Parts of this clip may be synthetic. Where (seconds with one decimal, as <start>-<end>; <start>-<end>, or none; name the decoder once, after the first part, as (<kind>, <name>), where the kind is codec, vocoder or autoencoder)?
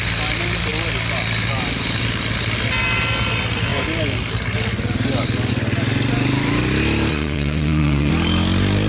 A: 7.1-8.1 (vocoder, WaveNeXt)